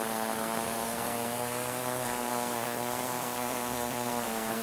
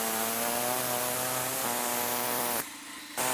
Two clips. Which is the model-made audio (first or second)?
first